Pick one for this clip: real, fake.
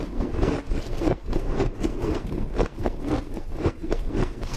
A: fake